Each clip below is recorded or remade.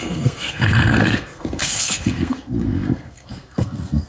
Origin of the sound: remade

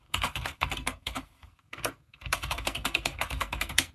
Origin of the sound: remade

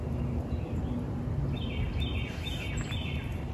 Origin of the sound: recorded